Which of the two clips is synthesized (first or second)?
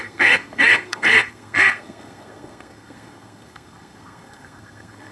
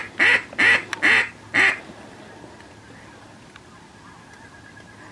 first